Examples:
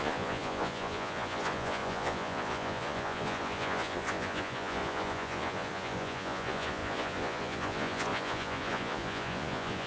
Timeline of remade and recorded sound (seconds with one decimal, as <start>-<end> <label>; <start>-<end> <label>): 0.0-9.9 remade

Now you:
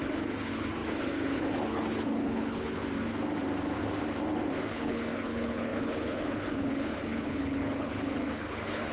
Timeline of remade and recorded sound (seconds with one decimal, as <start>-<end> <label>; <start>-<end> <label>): 0.0-2.8 remade; 2.8-4.7 recorded; 4.7-8.9 remade

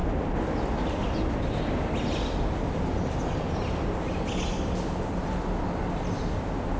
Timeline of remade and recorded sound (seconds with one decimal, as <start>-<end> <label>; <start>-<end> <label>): 0.0-6.8 recorded

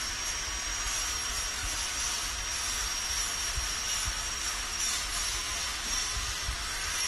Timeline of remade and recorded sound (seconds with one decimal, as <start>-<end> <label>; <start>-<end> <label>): 0.0-5.6 recorded; 5.6-7.1 remade

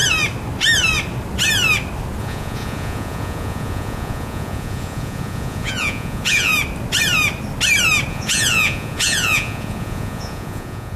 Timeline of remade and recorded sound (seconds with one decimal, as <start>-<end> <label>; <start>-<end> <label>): 0.0-2.2 recorded; 2.2-6.5 remade; 6.5-8.1 recorded; 8.1-11.0 remade

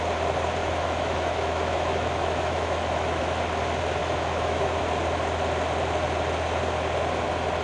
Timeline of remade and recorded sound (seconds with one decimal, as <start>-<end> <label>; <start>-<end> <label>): 0.0-0.6 recorded; 0.6-3.2 remade; 3.2-4.0 recorded; 4.0-4.8 remade; 4.8-7.6 recorded